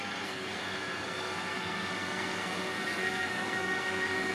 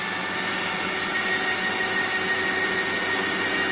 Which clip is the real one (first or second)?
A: second